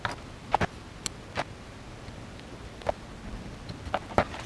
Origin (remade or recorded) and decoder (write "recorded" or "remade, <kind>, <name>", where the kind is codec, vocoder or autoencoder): recorded